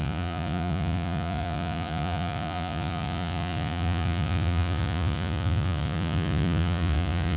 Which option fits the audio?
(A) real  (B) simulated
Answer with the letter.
B